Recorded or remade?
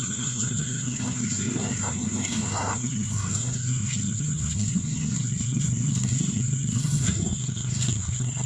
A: remade